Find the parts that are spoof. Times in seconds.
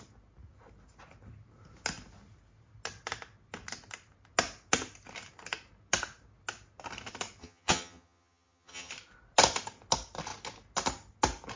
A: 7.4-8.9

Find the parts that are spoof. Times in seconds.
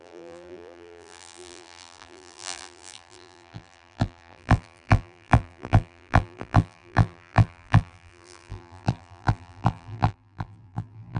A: 0.0-11.2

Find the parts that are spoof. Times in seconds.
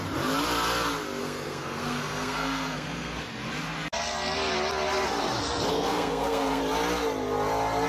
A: 1.2-3.2; 5.7-6.6